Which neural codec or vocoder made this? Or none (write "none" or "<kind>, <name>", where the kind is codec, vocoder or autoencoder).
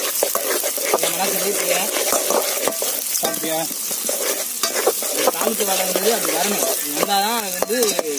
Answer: none